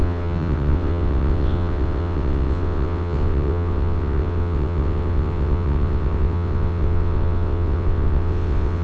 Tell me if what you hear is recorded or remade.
remade